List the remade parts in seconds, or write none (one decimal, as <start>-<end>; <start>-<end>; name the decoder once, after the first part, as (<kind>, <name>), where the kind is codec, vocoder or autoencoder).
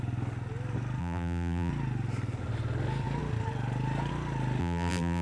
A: 1.0-1.7 (vocoder, BigVGAN v2); 4.6-5.2